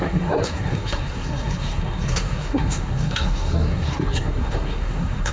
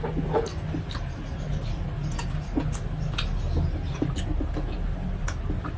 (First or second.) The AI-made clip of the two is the first